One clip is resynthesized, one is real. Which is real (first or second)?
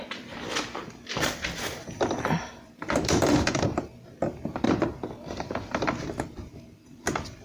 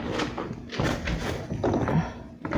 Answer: second